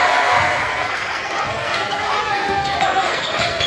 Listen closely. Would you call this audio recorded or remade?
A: remade